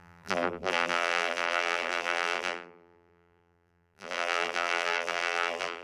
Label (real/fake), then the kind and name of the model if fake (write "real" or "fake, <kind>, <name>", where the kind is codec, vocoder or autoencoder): fake, vocoder, BigVGAN v2